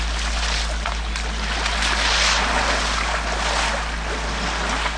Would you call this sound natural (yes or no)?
yes